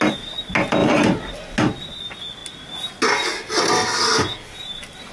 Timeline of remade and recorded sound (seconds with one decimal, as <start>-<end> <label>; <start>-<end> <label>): 0.0-5.1 recorded